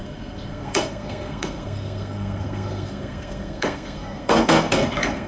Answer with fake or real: fake